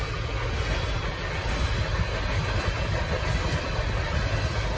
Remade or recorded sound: recorded